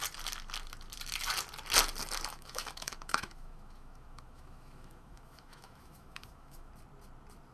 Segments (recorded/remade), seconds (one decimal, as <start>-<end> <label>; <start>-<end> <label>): 0.0-2.3 recorded; 2.3-6.7 remade; 6.7-7.5 recorded